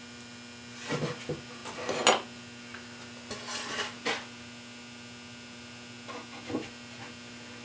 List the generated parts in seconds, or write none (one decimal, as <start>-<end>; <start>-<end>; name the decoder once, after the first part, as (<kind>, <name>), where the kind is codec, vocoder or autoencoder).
none

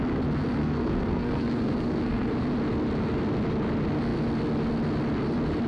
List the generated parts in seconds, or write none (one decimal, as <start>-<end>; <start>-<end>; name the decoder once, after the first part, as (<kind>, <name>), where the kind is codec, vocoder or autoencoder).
0.6-2.3 (codec, SNAC)